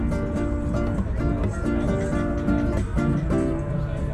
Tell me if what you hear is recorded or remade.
recorded